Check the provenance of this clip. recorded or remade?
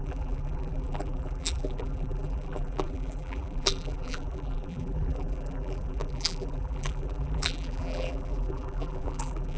remade